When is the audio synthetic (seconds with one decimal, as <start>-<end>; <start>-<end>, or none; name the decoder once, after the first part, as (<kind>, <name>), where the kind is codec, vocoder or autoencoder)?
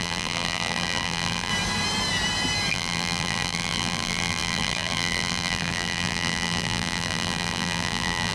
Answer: 0.0-1.5 (vocoder, BigVGAN v2); 2.7-8.3